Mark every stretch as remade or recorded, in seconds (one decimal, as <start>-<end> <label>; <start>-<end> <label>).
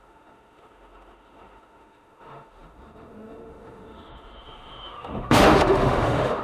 0.0-6.4 remade